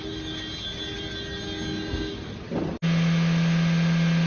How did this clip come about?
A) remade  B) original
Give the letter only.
B